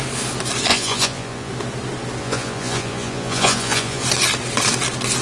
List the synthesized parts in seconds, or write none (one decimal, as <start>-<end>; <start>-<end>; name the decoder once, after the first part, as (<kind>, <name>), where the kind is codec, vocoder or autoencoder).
0.7-1.5 (vocoder, Vocos); 2.2-4.0